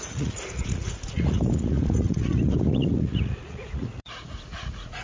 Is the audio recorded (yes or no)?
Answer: no